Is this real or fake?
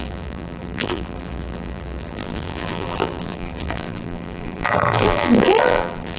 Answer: fake